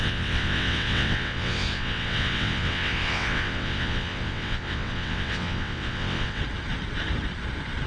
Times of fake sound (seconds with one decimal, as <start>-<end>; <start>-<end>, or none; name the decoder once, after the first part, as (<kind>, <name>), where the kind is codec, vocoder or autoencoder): 0.0-6.4 (vocoder, WaveNeXt)